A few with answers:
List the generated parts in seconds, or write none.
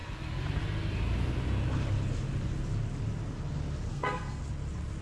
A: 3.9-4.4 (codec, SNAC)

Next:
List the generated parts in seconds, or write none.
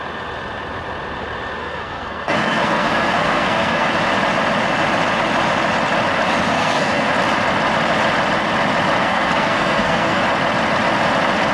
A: 1.6-3.9 (codec, SNAC); 6.5-7.1; 9.0-10.2